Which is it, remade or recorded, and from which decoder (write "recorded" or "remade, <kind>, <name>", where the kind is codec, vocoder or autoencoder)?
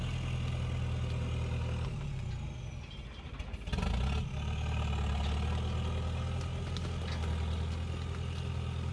recorded